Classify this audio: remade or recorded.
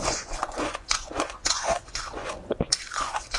remade